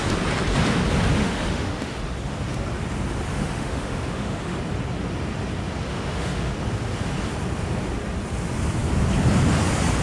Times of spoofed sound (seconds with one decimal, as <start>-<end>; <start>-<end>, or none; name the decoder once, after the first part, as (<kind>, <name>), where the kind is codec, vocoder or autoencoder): 1.2-2.0 (autoencoder, DAC-VAE); 3.3-4.6; 5.9-6.5